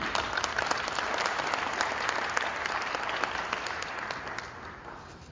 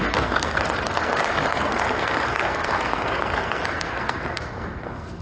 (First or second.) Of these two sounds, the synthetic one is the second